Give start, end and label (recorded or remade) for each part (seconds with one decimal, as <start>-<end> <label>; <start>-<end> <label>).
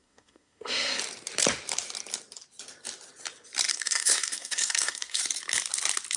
0.0-1.0 remade; 1.0-3.7 recorded; 3.7-5.2 remade; 5.2-6.2 recorded